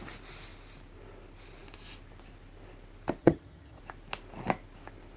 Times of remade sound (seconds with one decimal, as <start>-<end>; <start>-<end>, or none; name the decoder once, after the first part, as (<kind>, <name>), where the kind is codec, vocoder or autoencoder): 3.2-3.8 (vocoder, HiFi-GAN)